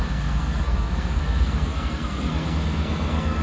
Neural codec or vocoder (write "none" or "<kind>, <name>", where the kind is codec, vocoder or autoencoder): codec, SNAC